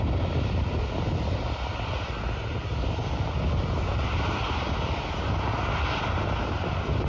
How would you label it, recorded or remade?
recorded